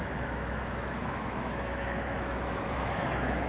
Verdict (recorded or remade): remade